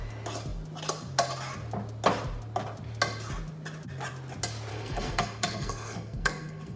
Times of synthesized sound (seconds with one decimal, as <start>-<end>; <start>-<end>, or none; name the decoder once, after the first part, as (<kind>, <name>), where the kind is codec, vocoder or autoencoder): 4.7-6.8 (codec, SNAC)